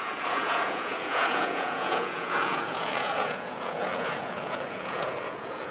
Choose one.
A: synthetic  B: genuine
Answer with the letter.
A